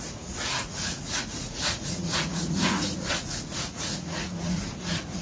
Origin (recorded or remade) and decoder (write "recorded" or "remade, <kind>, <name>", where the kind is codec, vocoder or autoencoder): remade, vocoder, Vocos